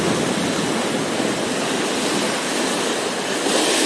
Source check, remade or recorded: recorded